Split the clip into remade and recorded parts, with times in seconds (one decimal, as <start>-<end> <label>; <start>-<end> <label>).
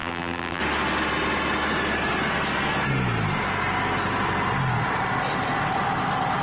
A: 0.0-0.6 remade; 0.6-6.4 recorded